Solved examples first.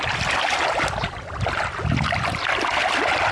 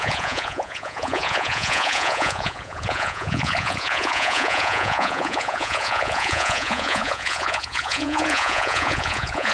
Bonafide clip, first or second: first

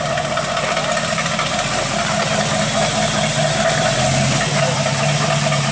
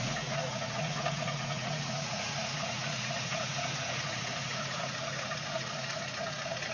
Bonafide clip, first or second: first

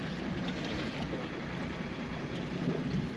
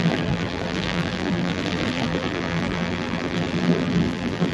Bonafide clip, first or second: first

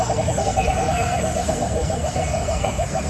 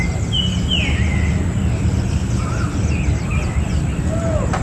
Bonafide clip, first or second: second